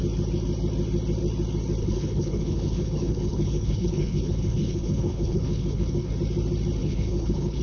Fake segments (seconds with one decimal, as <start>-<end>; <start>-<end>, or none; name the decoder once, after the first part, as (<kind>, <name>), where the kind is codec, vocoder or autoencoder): 1.8-6.1 (codec, HILCodec); 6.8-7.6